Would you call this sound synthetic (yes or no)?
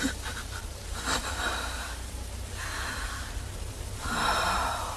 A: yes